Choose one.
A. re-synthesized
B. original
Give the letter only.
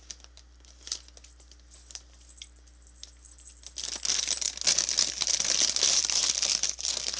B